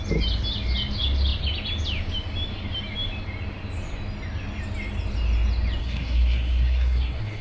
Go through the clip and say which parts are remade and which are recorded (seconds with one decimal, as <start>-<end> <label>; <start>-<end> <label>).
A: 0.0-5.8 recorded; 5.8-7.4 remade